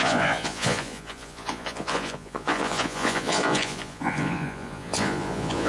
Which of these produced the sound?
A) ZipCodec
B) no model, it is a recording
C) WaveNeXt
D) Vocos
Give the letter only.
D